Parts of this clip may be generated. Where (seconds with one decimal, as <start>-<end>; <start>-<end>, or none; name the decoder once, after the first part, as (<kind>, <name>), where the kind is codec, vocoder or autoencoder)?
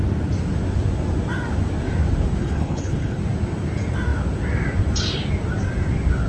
2.4-3.2 (codec, HILCodec)